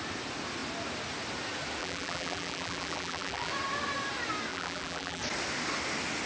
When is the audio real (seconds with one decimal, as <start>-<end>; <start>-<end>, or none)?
0.0-1.8; 3.5-4.5; 5.2-6.3